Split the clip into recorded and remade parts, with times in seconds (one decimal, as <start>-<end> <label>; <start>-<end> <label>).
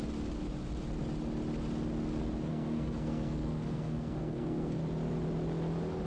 0.0-2.5 recorded; 2.5-4.8 remade; 4.8-6.1 recorded